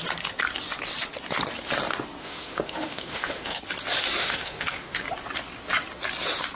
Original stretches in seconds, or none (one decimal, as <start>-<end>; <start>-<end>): 0.0-2.2; 3.6-4.2; 5.0-6.6